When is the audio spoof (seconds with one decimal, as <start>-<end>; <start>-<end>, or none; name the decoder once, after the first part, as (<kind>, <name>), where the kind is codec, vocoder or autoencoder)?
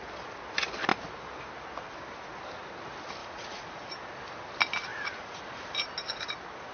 3.2-3.9 (vocoder, Vocos); 4.9-5.4